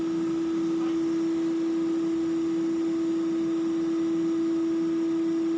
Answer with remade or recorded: recorded